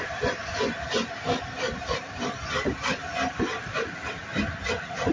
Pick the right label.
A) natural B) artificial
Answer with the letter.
B